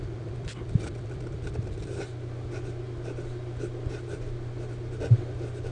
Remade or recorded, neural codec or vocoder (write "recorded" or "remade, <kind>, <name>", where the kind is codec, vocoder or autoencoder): recorded